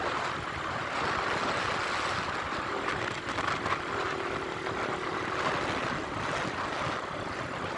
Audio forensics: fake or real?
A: real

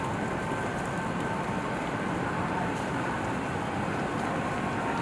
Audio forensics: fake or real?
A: real